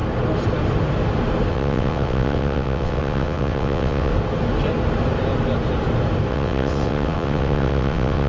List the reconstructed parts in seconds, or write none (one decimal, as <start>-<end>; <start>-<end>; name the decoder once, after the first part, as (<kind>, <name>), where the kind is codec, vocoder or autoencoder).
1.5-4.1 (vocoder, WaveNeXt); 6.3-8.3